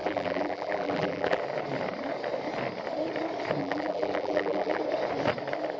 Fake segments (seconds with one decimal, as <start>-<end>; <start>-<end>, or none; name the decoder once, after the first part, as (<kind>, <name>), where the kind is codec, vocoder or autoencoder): 0.0-1.4 (vocoder, BigVGAN v2); 3.6-4.8